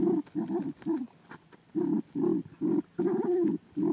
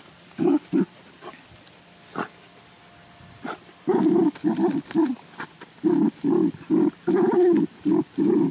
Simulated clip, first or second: second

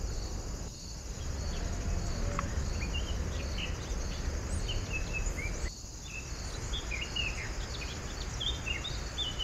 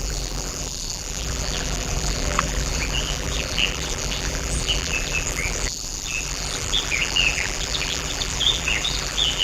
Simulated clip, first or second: second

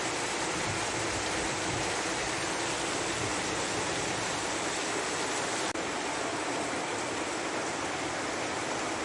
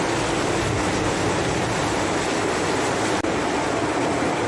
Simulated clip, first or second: first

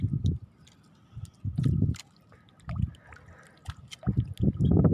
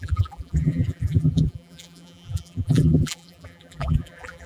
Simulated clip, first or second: second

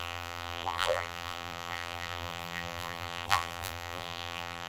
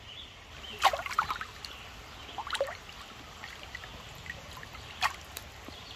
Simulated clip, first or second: first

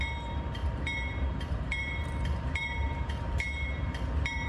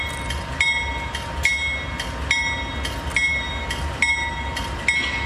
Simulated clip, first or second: first